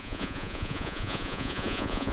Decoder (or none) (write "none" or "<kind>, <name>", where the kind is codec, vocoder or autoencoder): vocoder, Vocos